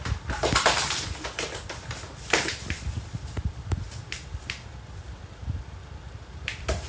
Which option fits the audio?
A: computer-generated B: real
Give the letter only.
A